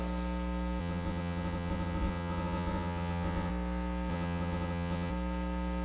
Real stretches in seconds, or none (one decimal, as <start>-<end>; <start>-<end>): 0.0-0.8; 3.5-4.1; 5.1-5.8